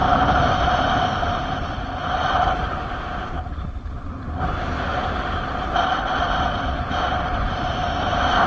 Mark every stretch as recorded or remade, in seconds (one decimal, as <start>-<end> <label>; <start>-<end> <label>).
0.0-8.5 recorded